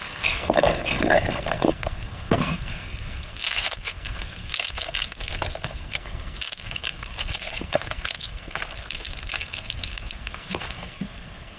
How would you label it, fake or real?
fake